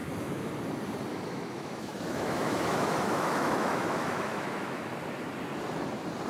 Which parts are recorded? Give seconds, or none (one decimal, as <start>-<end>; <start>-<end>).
0.5-1.1; 4.9-6.3